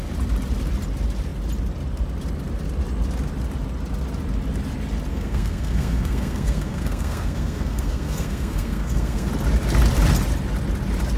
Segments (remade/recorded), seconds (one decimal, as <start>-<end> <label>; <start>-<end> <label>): 0.0-5.1 recorded; 5.1-9.3 remade; 9.3-11.2 recorded